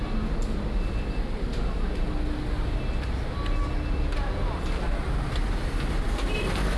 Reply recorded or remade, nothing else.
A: recorded